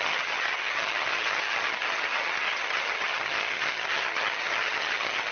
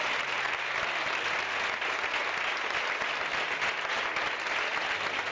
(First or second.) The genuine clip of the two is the second